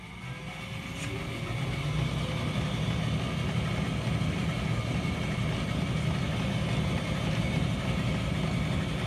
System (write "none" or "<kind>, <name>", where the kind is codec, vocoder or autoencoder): none